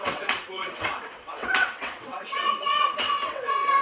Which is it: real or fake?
fake